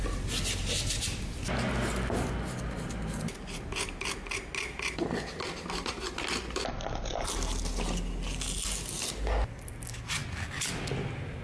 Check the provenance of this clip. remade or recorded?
recorded